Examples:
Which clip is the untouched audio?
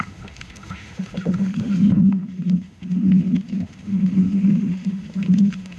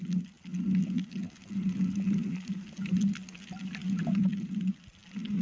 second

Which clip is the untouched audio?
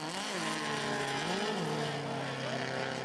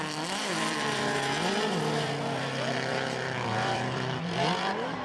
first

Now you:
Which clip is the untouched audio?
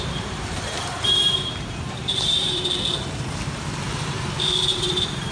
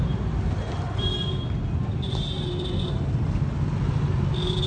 second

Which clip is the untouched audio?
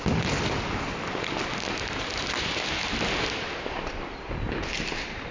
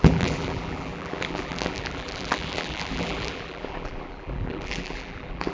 first